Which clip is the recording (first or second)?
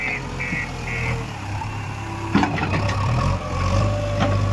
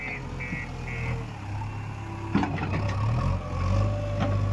second